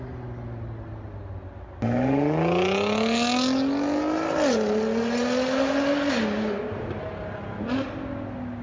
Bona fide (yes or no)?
yes